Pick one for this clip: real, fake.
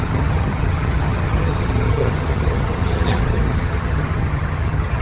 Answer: fake